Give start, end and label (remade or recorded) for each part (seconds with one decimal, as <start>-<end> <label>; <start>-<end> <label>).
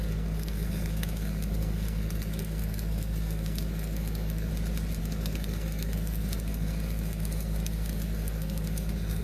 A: 0.0-4.5 remade; 4.5-5.0 recorded; 5.0-9.2 remade